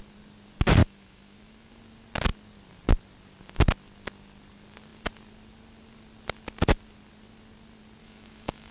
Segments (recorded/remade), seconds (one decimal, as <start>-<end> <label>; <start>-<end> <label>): 0.0-0.8 recorded; 0.8-1.7 remade; 1.7-8.0 recorded; 8.0-8.7 remade